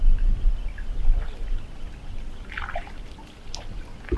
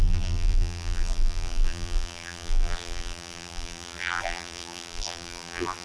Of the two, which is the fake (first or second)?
second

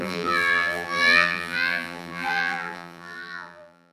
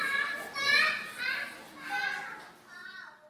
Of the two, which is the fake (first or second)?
first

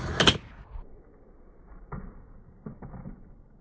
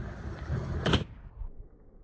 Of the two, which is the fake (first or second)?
second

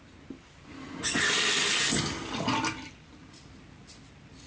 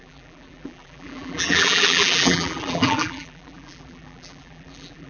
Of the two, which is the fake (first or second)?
second